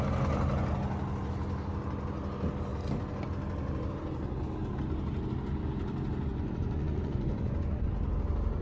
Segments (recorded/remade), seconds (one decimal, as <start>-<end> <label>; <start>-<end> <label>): 0.0-6.3 recorded; 6.3-7.9 remade; 7.9-8.6 recorded